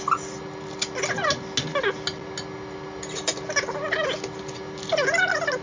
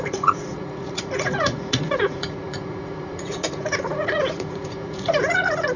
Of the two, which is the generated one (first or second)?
second